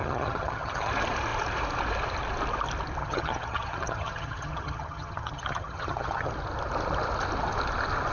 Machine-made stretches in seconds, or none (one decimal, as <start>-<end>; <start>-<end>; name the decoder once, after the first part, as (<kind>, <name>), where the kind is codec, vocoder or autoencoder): 0.0-0.9 (vocoder, HiFi-GAN); 3.0-6.3